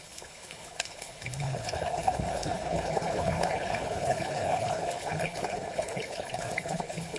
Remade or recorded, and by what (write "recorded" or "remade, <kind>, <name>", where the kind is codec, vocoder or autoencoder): remade, codec, HILCodec